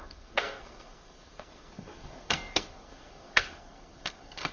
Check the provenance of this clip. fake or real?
fake